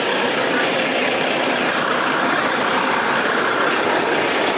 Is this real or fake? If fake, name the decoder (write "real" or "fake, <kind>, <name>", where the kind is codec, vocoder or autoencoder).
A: real